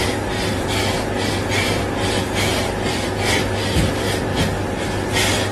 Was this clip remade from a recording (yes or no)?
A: no